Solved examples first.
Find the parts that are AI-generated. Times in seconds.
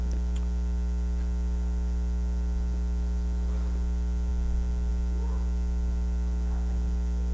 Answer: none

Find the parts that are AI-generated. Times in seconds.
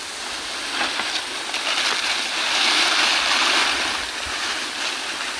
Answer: none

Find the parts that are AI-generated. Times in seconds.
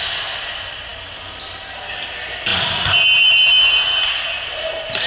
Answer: none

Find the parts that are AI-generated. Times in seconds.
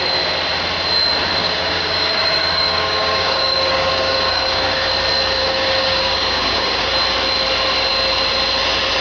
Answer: 1.4-4.9 (codec, DAC); 5.4-6.9